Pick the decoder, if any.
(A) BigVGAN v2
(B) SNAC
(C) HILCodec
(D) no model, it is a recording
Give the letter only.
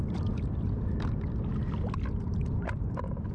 D